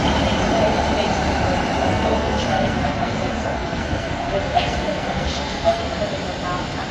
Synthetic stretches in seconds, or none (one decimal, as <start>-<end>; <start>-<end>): 1.9-5.8